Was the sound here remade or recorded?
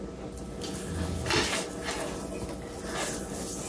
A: recorded